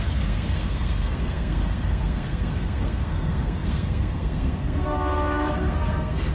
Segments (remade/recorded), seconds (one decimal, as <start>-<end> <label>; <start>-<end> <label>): 0.0-6.3 remade